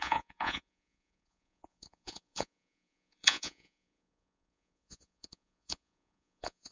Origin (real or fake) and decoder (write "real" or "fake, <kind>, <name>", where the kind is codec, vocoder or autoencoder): fake, vocoder, Vocos